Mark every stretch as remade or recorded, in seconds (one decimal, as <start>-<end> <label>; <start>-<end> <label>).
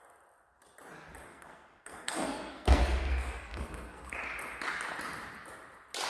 0.0-1.3 recorded; 1.3-4.1 remade; 4.1-6.1 recorded